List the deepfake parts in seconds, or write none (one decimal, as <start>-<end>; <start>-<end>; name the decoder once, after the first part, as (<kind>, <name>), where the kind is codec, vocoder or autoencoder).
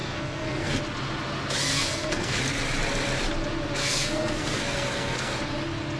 0.0-0.8 (codec, SNAC); 1.7-2.4; 3.8-5.3